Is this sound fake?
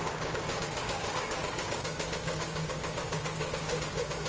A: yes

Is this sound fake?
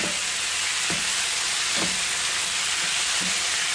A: no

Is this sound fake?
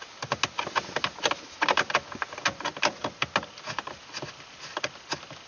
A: no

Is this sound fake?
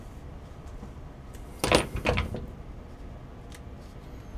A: no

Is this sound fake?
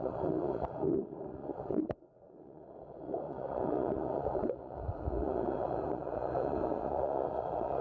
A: yes